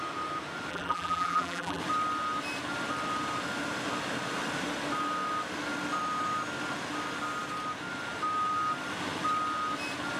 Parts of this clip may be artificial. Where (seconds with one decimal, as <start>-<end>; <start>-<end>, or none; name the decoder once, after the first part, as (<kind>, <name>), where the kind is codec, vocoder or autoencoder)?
0.7-1.8 (vocoder, BigVGAN v2)